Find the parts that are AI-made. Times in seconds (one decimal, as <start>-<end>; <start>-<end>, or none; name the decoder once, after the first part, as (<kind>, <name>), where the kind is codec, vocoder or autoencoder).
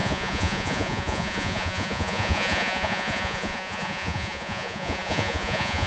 0.0-5.9 (vocoder, Vocos)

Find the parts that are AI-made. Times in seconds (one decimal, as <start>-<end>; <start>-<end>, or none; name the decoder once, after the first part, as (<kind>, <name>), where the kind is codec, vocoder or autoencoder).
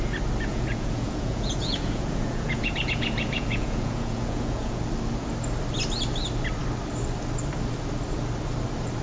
0.5-4.8 (vocoder, Vocos)